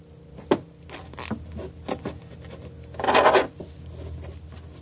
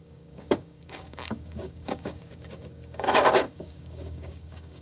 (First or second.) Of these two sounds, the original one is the first